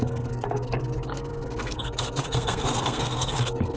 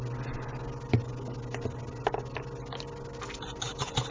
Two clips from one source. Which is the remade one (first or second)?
first